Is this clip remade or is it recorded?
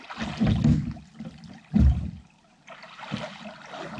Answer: recorded